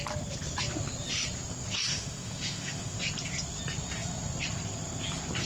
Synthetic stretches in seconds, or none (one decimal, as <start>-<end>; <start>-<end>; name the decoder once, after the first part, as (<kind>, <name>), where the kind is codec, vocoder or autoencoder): 1.9-3.0 (autoencoder, DAC-VAE)